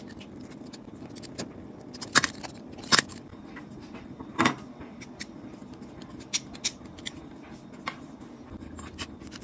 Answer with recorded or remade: recorded